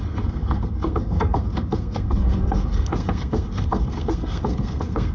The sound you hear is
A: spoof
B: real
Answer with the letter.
A